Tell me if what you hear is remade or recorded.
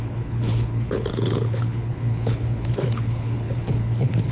remade